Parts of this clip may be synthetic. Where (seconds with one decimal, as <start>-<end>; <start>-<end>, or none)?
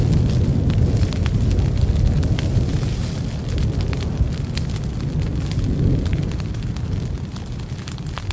none